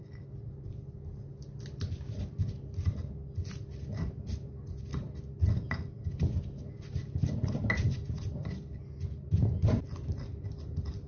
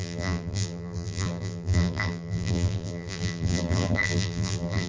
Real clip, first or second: first